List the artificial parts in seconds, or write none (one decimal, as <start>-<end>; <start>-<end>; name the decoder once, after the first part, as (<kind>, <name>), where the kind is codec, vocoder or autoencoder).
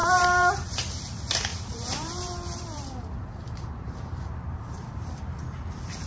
0.0-0.8 (vocoder, BigVGAN v2); 1.5-5.2